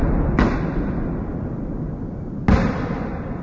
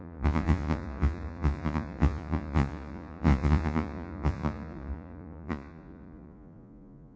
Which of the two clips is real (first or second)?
first